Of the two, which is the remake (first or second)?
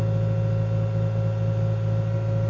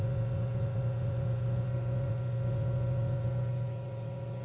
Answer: second